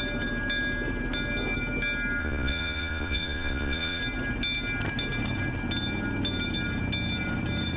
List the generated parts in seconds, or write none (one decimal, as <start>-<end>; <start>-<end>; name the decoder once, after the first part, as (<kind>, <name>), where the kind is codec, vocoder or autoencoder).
2.2-4.0 (vocoder, Vocos)